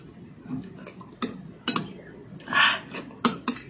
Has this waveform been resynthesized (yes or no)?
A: no